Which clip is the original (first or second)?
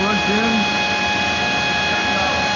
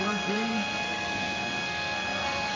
first